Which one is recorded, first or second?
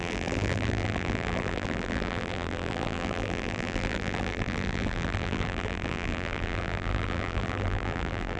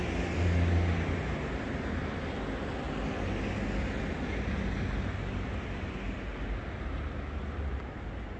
second